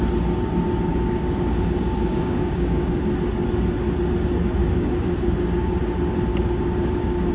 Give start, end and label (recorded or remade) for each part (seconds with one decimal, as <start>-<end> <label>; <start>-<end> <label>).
0.0-0.9 recorded; 0.9-3.0 remade; 3.0-4.6 recorded; 4.6-5.7 remade; 5.7-6.3 recorded; 6.3-7.3 remade